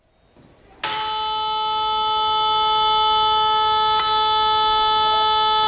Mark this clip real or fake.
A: real